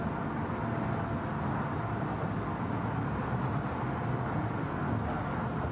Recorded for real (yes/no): yes